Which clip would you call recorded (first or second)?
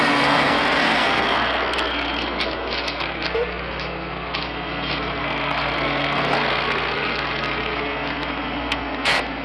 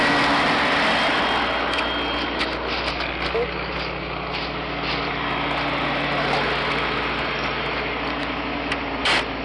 second